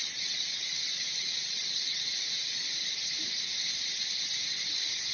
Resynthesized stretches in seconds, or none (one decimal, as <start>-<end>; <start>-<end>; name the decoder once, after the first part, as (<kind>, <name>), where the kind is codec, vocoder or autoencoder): 0.0-2.2 (vocoder, WaveNeXt)